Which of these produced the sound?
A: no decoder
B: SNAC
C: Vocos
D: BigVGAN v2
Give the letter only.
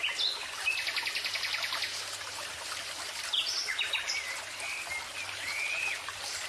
A